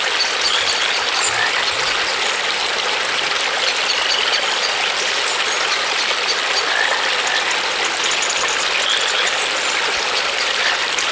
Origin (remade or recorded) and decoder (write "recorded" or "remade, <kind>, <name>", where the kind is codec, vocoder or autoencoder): recorded